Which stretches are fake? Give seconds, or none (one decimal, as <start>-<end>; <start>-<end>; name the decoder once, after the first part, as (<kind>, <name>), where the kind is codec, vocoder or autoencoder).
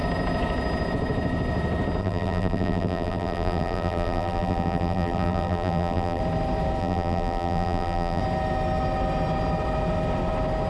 2.0-6.2 (vocoder, BigVGAN v2); 6.8-8.2